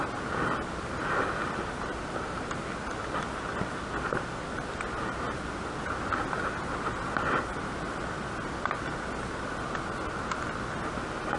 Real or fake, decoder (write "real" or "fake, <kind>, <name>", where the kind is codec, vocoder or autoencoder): real